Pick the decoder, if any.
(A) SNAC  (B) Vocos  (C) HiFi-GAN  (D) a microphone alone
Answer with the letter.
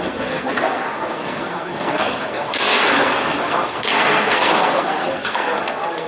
A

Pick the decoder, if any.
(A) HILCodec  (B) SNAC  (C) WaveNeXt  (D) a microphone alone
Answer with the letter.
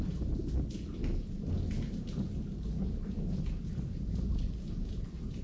D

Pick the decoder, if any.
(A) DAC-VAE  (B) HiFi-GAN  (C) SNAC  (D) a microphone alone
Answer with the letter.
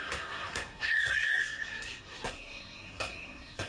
C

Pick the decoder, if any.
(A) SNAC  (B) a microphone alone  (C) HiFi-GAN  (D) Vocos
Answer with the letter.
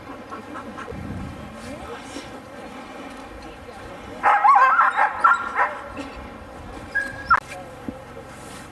B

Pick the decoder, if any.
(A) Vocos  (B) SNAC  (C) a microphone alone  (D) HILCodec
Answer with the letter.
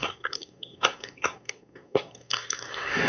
B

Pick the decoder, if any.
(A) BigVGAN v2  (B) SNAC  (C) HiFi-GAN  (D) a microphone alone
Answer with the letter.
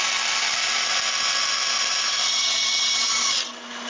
D